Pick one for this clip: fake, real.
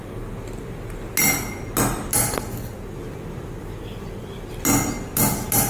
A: real